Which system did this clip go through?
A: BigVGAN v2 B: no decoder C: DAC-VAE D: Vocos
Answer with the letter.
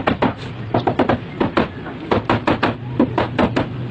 A